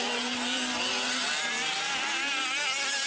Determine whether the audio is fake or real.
real